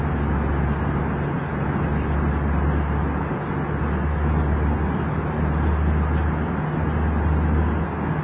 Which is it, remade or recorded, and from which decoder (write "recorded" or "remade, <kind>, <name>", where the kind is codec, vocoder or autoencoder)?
recorded